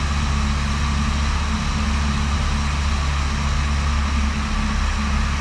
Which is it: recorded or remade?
recorded